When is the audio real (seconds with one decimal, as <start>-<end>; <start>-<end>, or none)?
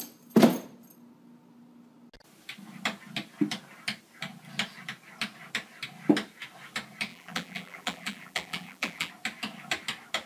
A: 0.0-7.1; 9.1-10.3